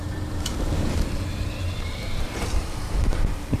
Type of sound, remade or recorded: remade